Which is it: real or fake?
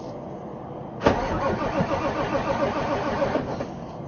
real